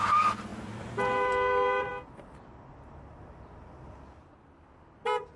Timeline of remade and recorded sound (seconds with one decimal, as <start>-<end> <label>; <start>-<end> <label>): 0.0-0.5 recorded; 0.5-1.9 remade; 1.9-5.4 recorded